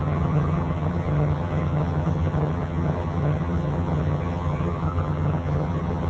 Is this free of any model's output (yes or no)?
no